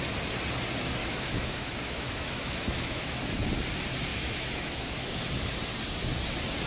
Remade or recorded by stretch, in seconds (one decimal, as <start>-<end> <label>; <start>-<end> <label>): 0.0-1.0 recorded; 1.0-3.2 remade; 3.2-4.1 recorded; 4.1-5.3 remade; 5.3-6.7 recorded